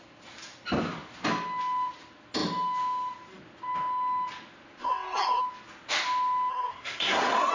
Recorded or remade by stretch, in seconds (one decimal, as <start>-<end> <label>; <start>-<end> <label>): 0.0-4.8 recorded; 4.8-5.4 remade; 5.4-6.5 recorded; 6.5-7.5 remade